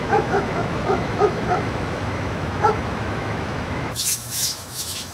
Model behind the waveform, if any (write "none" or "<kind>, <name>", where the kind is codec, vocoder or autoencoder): autoencoder, DAC-VAE